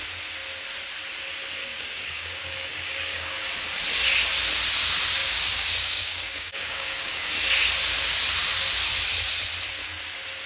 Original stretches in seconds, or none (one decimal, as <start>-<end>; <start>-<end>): 0.0-1.6; 3.5-5.2; 7.3-10.5